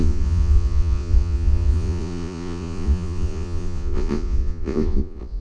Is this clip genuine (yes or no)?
no